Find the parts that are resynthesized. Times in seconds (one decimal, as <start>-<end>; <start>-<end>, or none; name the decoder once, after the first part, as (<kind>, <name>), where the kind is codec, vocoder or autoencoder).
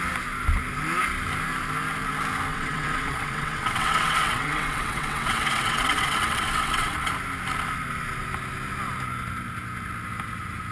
2.5-7.1 (vocoder, WaveNeXt)